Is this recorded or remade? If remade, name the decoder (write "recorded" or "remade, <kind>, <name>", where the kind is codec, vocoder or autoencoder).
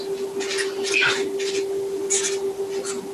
recorded